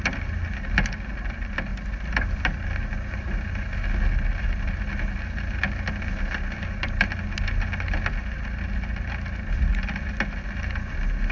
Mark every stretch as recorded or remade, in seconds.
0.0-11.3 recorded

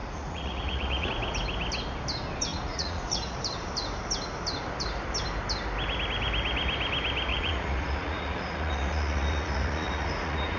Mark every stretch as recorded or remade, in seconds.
0.0-1.1 remade; 1.1-2.5 recorded; 2.5-3.4 remade; 3.4-7.3 recorded; 7.3-10.6 remade

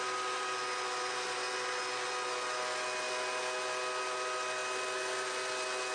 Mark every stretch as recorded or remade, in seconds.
0.0-5.9 recorded

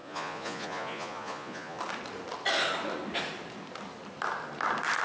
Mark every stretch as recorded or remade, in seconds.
0.0-1.8 remade; 1.8-5.0 recorded

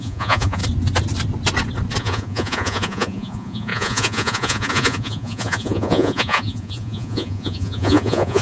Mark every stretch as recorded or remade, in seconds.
0.0-0.6 remade; 0.6-2.0 recorded; 2.0-8.4 remade